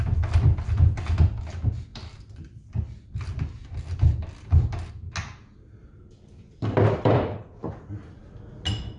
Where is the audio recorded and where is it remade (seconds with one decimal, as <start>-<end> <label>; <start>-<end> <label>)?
0.0-1.9 recorded; 1.9-4.9 remade; 4.9-5.8 recorded; 5.8-8.5 remade; 8.5-9.0 recorded